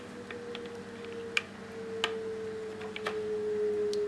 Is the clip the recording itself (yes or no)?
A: yes